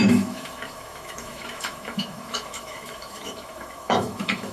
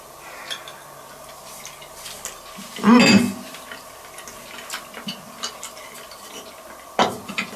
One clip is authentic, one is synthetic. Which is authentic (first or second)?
second